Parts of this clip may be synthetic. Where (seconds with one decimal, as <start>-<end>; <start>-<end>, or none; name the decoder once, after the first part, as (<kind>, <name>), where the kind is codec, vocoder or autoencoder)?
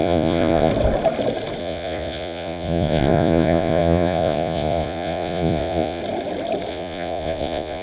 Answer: 0.0-0.7 (vocoder, Vocos); 1.6-6.0; 6.7-7.8